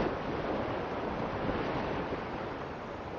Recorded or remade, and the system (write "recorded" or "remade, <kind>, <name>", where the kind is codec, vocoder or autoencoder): recorded